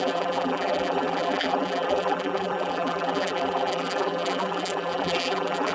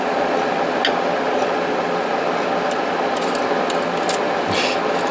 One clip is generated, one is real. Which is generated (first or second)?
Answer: first